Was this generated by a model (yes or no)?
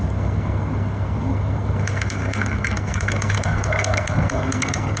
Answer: yes